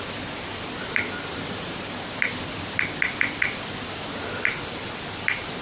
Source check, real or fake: fake